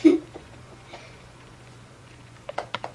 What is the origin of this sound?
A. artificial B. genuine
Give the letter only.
A